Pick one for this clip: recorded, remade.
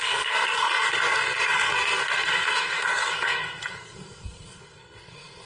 remade